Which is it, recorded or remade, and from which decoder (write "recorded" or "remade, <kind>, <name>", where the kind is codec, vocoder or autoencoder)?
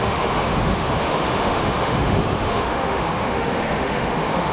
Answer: remade, autoencoder, DAC-VAE